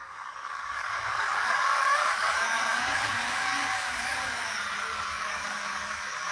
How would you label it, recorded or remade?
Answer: remade